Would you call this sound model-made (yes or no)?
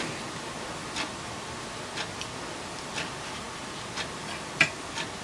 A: no